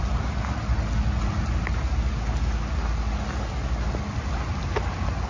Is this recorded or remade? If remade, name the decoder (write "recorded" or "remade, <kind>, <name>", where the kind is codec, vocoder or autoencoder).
recorded